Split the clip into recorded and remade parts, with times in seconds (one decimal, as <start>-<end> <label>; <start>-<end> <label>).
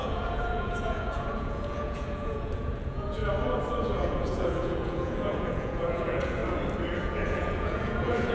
0.0-3.2 remade; 3.2-3.8 recorded; 3.8-6.4 remade; 6.4-7.0 recorded; 7.0-8.3 remade